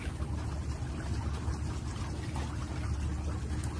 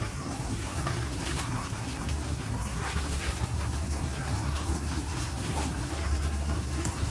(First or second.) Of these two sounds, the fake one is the second